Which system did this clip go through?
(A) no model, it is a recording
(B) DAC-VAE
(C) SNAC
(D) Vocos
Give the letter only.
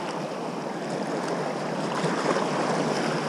A